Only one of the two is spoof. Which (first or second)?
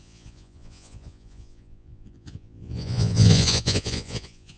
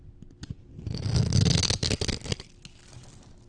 first